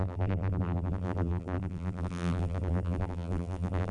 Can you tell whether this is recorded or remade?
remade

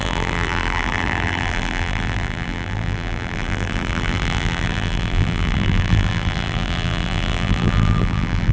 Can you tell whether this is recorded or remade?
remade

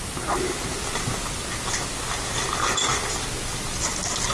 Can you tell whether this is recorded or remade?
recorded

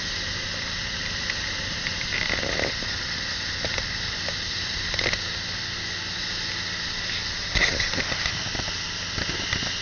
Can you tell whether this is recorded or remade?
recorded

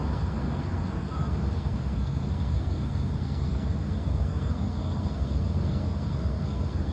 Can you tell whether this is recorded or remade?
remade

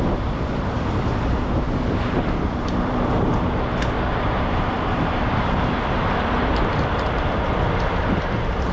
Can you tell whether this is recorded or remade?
remade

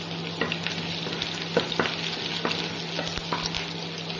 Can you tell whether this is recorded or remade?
recorded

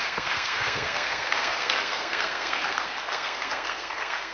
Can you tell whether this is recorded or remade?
remade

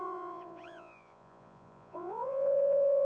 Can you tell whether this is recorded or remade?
remade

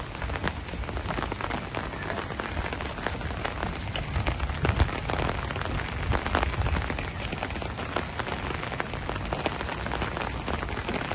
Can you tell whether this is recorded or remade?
recorded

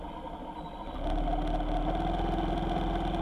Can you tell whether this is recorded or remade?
recorded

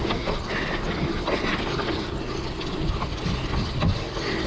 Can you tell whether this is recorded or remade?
recorded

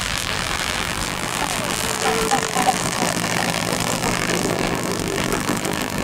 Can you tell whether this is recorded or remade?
remade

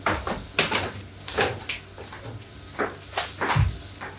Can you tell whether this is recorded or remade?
recorded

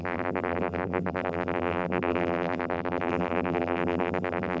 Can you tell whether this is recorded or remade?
remade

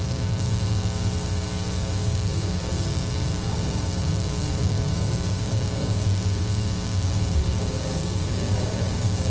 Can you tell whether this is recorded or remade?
remade